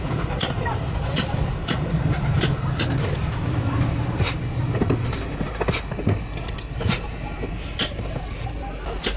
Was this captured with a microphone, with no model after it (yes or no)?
yes